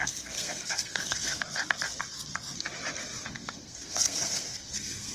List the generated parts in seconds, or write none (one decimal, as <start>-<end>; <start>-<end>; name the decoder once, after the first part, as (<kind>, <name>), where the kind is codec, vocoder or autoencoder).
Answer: 0.0-1.4 (codec, SNAC); 3.3-5.1